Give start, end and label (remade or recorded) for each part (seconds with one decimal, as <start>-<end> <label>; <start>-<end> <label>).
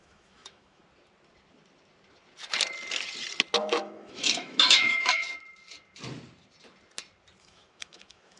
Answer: 0.0-0.8 remade; 0.8-3.6 recorded; 3.6-5.2 remade; 5.2-7.4 recorded; 7.4-8.4 remade